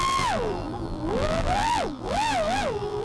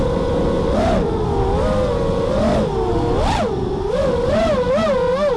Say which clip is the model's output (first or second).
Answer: first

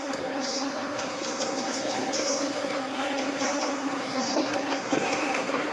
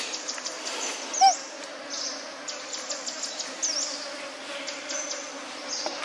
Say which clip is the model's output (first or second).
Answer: first